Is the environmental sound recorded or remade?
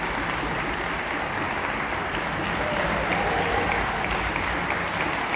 recorded